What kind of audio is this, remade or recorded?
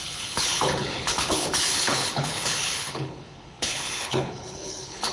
remade